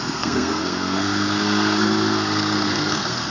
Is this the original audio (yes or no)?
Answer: no